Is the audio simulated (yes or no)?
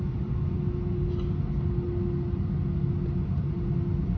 no